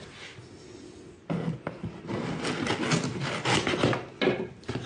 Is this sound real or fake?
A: real